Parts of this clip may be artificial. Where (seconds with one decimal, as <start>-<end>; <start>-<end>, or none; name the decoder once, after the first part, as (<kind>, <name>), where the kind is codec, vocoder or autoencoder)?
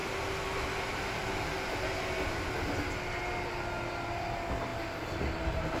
none